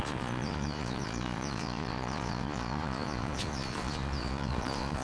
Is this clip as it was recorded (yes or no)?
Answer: no